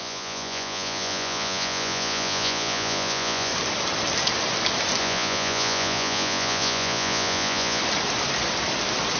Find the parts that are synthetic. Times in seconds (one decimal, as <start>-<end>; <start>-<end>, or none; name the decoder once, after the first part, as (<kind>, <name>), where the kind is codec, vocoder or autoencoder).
0.0-3.5 (vocoder, Vocos); 5.0-7.8